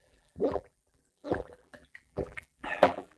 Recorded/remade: remade